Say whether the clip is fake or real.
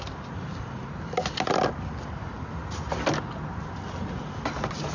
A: real